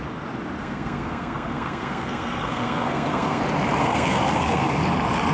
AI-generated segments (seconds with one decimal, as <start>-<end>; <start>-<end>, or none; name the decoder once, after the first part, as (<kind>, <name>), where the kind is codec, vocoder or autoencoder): 0.6-3.4 (codec, SNAC); 3.8-4.8

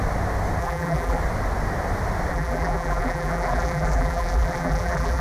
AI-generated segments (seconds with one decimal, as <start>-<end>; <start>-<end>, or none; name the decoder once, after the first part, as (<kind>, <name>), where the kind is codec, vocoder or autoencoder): 0.6-1.2 (vocoder, BigVGAN v2); 2.3-5.2

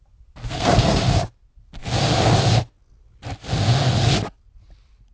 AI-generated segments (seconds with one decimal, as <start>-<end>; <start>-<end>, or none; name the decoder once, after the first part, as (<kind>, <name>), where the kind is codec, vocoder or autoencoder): 0.4-1.0 (codec, SNAC)